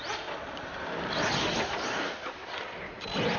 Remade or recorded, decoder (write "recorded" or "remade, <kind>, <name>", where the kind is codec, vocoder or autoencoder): recorded